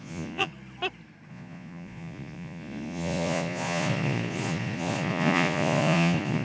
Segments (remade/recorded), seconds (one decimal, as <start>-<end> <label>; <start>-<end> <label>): 0.0-0.5 remade; 0.5-1.3 recorded; 1.3-6.4 remade